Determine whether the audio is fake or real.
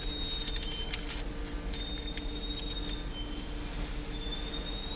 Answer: real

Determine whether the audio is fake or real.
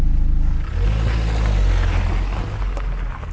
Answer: real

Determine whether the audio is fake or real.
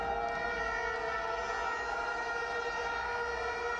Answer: real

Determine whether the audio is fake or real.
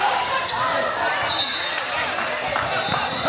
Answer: real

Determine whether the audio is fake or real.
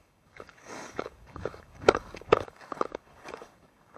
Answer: fake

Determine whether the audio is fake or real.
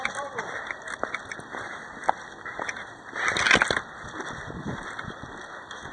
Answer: real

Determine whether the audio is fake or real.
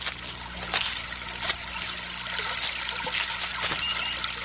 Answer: real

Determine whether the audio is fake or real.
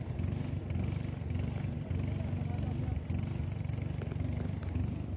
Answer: real